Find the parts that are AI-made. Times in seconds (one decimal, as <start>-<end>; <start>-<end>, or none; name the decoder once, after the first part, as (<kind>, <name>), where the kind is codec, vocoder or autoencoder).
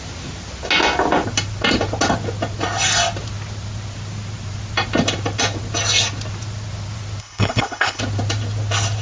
7.2-8.0 (codec, HILCodec)